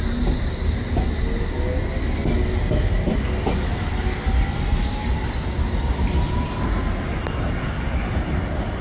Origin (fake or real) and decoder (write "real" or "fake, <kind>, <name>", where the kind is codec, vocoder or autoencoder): real